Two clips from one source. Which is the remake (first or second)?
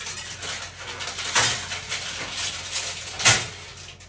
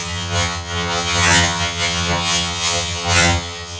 second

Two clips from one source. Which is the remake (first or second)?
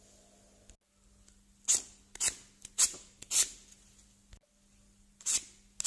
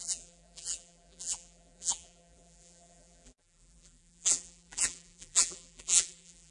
second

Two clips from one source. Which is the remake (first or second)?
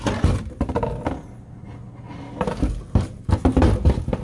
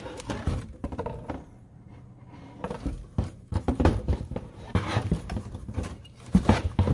second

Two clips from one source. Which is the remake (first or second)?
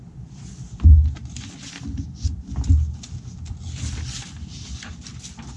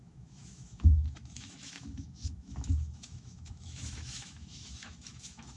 second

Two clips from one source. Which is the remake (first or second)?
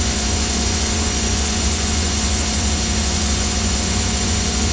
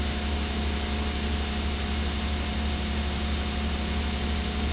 first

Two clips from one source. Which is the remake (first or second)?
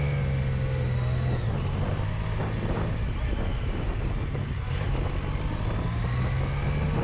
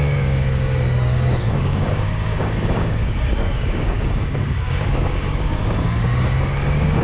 second